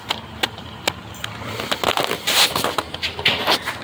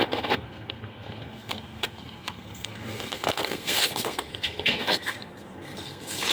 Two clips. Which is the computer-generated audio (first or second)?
second